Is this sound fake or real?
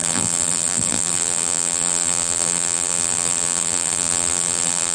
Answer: fake